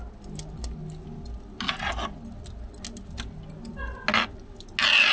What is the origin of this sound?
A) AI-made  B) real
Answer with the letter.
B